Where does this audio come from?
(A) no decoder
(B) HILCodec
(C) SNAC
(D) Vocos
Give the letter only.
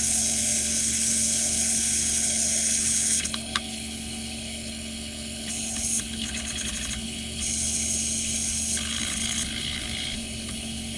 B